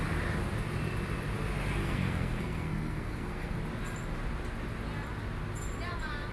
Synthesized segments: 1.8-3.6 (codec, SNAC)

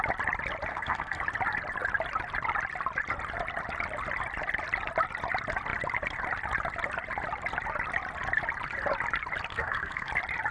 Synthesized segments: 0.7-1.2 (codec, SNAC); 9.5-10.1

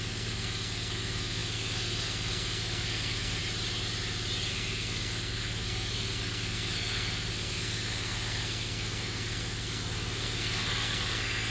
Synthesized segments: 0.0-3.4 (codec, SNAC); 4.5-11.5

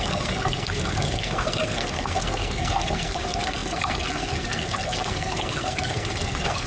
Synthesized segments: 0.0-6.7 (codec, SNAC)

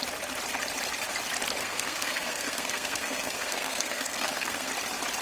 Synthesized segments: 1.6-4.7 (codec, SNAC)

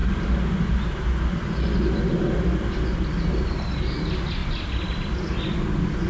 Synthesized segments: none

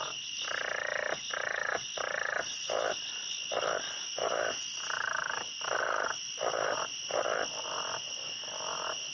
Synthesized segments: none

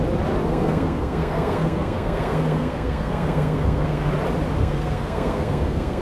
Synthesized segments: 0.5-4.1 (codec, SNAC); 4.6-6.0